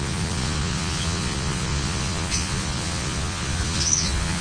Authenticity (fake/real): fake